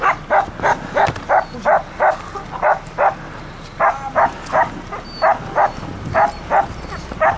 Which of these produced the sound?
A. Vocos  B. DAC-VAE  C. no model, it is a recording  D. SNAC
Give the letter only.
C